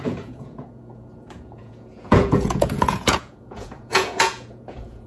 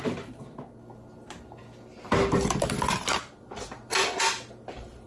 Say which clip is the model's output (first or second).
first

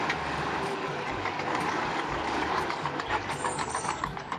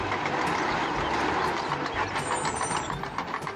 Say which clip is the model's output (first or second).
first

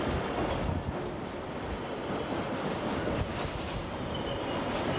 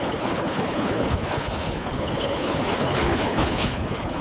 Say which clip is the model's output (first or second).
second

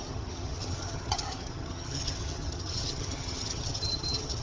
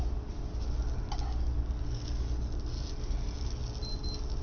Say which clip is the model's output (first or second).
first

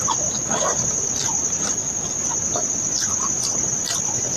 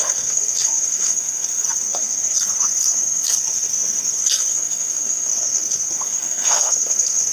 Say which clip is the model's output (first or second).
second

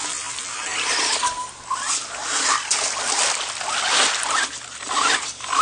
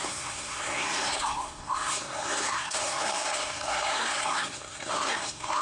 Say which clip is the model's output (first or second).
second